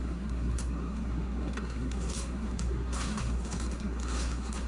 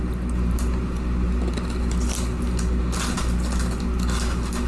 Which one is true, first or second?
second